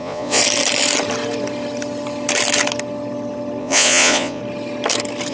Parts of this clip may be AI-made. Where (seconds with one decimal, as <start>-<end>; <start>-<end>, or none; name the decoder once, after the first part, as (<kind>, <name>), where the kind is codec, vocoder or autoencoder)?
0.0-0.4 (vocoder, Vocos); 3.6-4.4